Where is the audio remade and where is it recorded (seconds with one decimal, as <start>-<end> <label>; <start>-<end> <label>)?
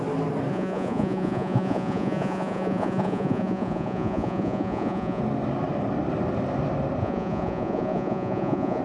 0.0-0.5 recorded; 0.5-5.2 remade; 5.2-7.0 recorded; 7.0-8.8 remade